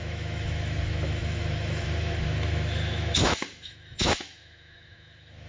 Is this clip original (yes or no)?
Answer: no